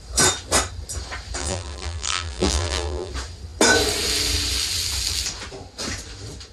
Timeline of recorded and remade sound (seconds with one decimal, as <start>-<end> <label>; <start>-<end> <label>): 0.0-1.4 recorded; 1.4-3.1 remade; 3.1-6.5 recorded